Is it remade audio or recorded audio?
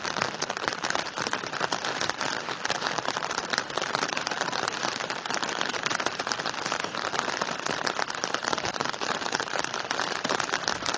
remade